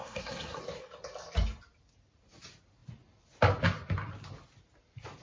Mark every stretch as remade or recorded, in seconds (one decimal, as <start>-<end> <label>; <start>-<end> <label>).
0.0-0.6 remade; 0.6-5.2 recorded